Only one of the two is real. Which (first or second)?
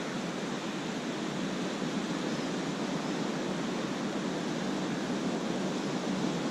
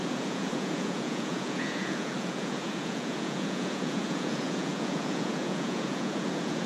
first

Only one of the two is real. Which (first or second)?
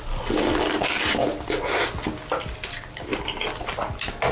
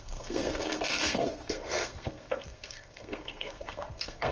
first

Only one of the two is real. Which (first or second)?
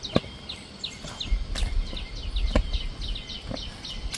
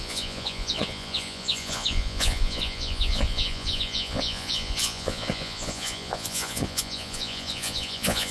first